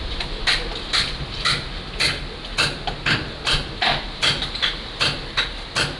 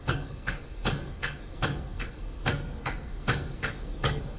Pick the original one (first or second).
first